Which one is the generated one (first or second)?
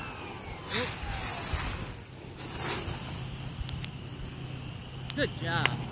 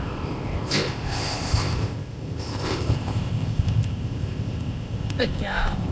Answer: second